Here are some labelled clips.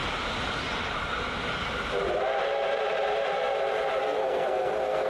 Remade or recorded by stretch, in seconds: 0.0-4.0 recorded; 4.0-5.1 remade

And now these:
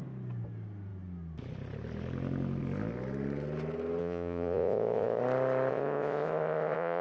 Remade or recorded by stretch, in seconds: 0.0-4.0 recorded; 4.0-5.2 remade; 5.2-5.7 recorded; 5.7-7.0 remade

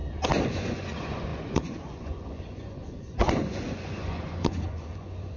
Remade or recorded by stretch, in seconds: 0.0-0.5 recorded; 0.5-5.4 remade

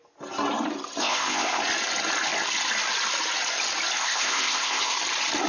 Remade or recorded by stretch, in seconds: 0.0-1.0 recorded; 1.0-1.6 remade; 1.6-4.0 recorded; 4.0-5.0 remade; 5.0-5.5 recorded

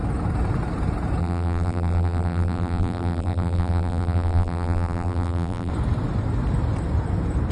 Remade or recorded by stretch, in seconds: 0.0-1.2 recorded; 1.2-5.7 remade; 5.7-7.5 recorded

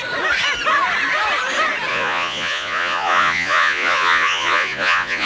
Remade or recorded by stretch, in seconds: 0.0-1.9 recorded; 1.9-5.3 remade